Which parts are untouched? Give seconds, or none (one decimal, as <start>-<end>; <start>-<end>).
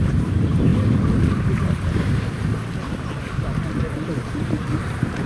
0.7-1.6; 2.6-4.3